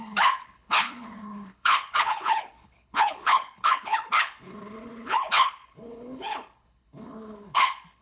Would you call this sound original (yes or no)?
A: no